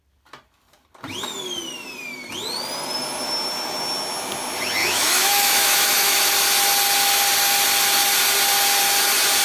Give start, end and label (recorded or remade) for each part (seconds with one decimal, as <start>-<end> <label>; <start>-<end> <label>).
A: 0.0-4.8 recorded; 4.8-6.2 remade; 6.2-9.4 recorded